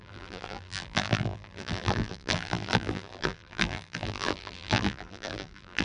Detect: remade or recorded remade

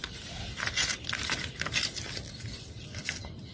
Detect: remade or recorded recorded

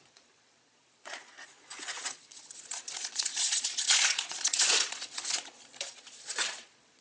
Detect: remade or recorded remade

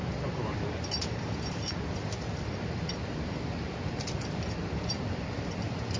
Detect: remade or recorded recorded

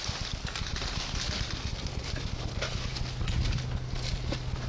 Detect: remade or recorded recorded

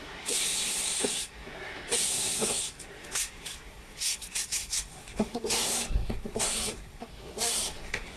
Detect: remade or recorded remade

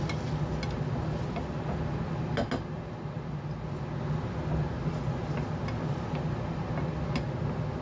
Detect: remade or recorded recorded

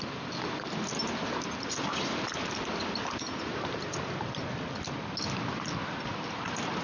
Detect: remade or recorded recorded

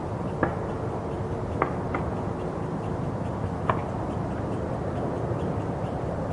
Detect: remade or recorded recorded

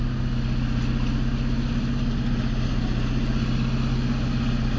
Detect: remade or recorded recorded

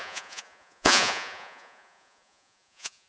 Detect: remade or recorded remade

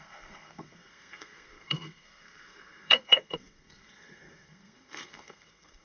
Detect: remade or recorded remade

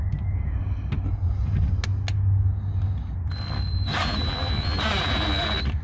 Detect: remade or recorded recorded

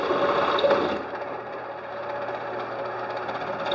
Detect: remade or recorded recorded